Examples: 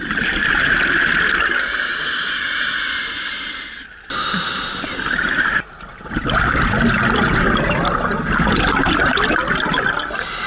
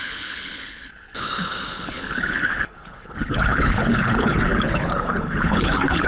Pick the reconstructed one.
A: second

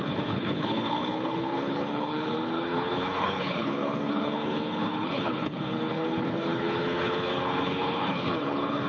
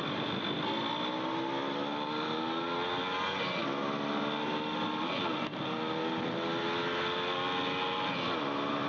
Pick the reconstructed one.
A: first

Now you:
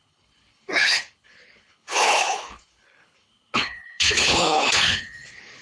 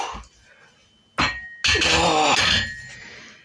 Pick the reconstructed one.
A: first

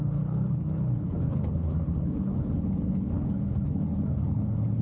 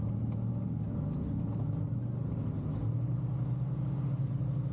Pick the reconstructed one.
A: first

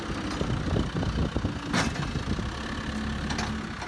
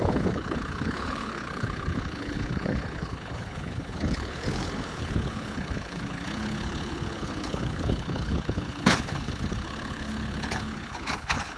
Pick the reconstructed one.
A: second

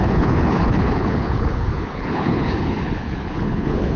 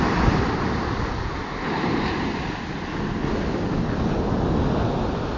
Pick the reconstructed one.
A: first